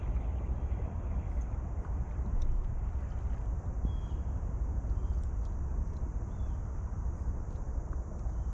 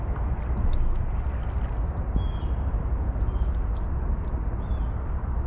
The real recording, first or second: second